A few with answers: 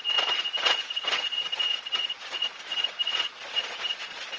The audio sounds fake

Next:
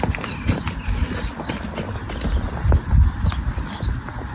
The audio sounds real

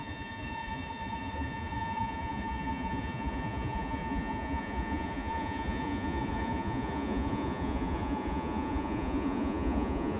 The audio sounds fake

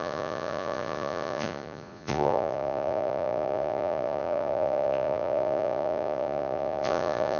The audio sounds fake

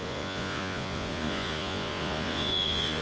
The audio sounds fake